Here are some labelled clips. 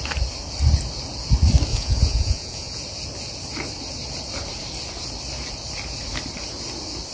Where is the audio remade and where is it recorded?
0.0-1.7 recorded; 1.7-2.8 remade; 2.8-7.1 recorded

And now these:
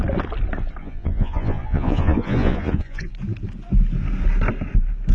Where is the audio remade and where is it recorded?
0.0-0.8 recorded; 0.8-3.1 remade; 3.1-5.1 recorded

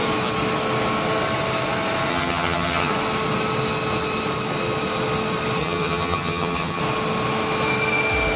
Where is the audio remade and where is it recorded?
0.0-2.1 recorded; 2.1-2.9 remade; 2.9-5.6 recorded; 5.6-6.8 remade; 6.8-8.4 recorded

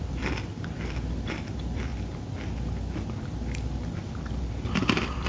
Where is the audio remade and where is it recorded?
0.0-1.9 remade; 1.9-4.4 recorded; 4.4-5.3 remade

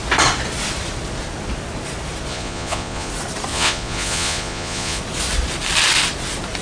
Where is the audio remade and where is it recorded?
0.0-2.3 recorded; 2.3-3.1 remade; 3.1-3.5 recorded; 3.5-5.0 remade; 5.0-6.6 recorded

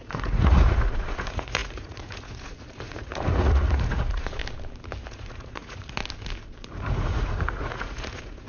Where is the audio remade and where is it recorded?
0.0-4.4 remade; 4.4-5.1 recorded; 5.1-6.0 remade; 6.0-6.7 recorded; 6.7-8.5 remade

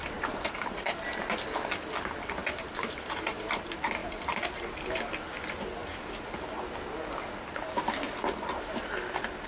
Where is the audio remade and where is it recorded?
0.0-2.4 recorded; 2.4-3.6 remade; 3.6-4.0 recorded; 4.0-5.0 remade; 5.0-5.8 recorded; 5.8-6.6 remade; 6.6-9.5 recorded

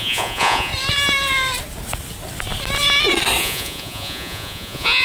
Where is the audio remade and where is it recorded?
0.0-0.7 remade; 0.7-3.4 recorded; 3.4-5.0 remade